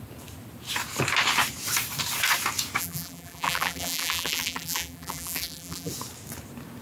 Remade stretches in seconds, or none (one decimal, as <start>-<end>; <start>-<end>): 2.8-5.9